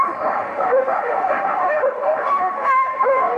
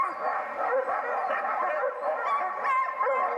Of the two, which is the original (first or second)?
second